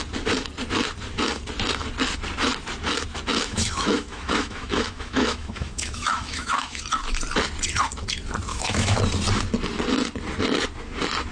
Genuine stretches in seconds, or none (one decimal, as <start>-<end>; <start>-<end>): 0.0-3.3; 6.8-8.5; 9.0-11.3